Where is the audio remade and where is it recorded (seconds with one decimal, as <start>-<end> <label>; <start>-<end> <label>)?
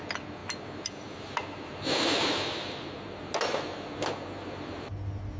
0.0-5.4 recorded